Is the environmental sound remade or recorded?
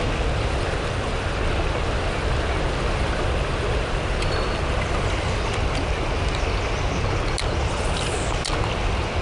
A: recorded